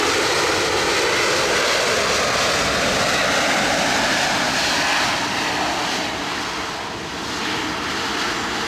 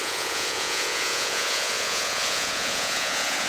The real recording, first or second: first